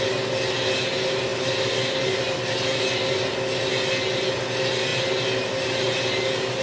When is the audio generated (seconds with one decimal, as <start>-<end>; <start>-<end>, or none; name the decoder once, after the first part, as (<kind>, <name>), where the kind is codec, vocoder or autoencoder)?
none